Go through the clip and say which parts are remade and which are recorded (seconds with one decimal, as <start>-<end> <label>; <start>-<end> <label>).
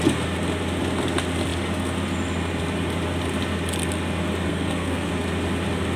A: 0.0-4.5 recorded; 4.5-5.1 remade; 5.1-6.0 recorded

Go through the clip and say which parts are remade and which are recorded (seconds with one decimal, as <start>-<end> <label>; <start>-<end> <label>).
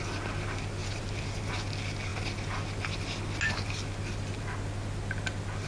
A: 0.0-0.8 recorded; 0.8-1.4 remade; 1.4-5.7 recorded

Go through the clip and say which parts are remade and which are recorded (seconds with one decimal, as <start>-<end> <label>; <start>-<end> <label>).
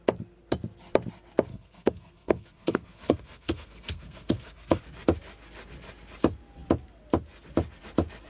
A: 0.0-1.5 recorded; 1.5-4.8 remade; 4.8-8.3 recorded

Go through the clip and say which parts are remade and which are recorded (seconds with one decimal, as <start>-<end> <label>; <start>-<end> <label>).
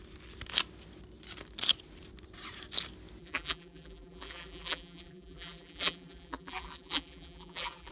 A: 0.0-3.2 recorded; 3.2-7.9 remade